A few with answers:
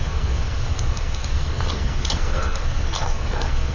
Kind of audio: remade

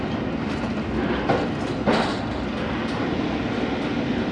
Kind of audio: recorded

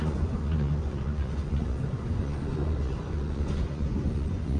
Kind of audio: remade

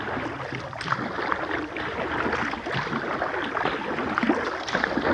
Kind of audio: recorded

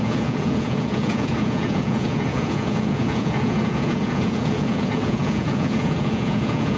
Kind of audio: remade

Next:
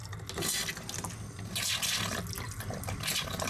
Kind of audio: recorded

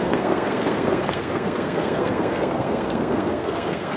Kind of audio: remade